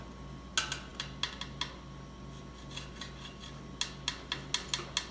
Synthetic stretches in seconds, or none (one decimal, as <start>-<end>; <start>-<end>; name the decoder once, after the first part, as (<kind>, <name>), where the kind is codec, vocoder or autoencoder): none